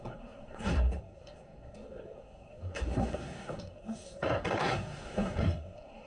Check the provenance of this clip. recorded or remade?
remade